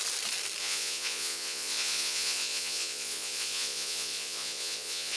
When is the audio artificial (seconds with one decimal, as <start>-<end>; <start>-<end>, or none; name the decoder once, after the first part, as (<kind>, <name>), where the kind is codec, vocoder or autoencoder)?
0.6-5.2 (vocoder, Vocos)